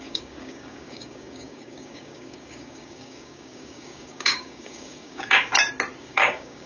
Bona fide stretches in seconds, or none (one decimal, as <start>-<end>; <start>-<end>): 5.5-6.0